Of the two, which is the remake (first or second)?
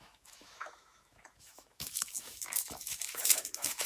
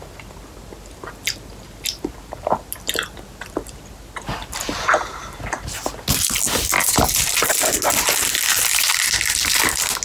first